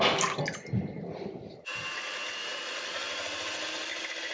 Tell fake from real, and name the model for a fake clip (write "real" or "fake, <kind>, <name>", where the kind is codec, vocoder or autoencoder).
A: real